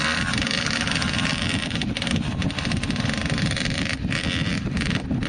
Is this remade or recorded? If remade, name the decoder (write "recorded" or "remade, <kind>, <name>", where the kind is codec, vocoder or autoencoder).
recorded